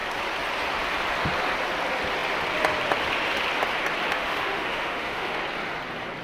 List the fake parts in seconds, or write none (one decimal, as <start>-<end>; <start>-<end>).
4.1-5.4